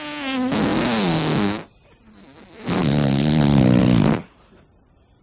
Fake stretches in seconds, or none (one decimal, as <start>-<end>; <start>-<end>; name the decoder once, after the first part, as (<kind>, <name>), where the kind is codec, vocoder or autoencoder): none